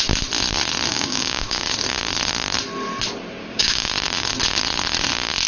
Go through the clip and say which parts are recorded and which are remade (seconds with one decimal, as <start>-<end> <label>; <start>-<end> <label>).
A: 0.0-0.9 recorded; 0.9-1.6 remade; 1.6-3.4 recorded; 3.4-3.9 remade; 3.9-5.5 recorded